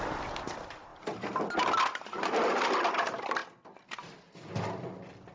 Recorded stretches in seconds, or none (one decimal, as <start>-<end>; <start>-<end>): 0.0-5.3